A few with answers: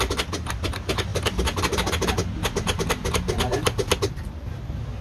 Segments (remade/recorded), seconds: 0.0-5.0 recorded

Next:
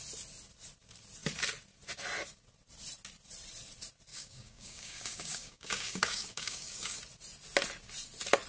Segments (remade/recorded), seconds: 0.0-4.1 recorded; 4.1-7.0 remade; 7.0-8.5 recorded

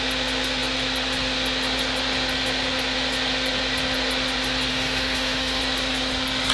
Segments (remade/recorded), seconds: 0.0-4.7 recorded; 4.7-5.6 remade; 5.6-6.5 recorded

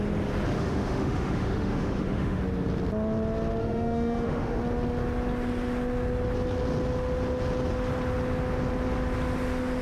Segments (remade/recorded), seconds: 0.0-0.5 recorded; 0.5-2.4 remade; 2.4-3.6 recorded; 3.6-4.6 remade; 4.6-9.8 recorded

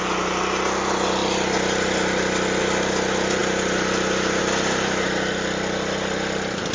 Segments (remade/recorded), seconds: 0.0-6.7 recorded

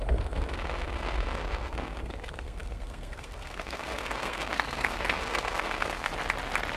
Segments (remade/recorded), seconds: 0.0-6.1 remade; 6.1-6.8 recorded

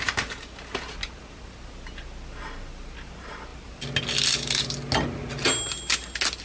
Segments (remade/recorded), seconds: 0.0-6.4 recorded

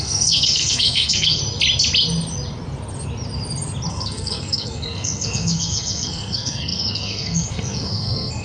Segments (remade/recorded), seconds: 0.0-1.4 remade; 1.4-3.9 recorded; 3.9-8.4 remade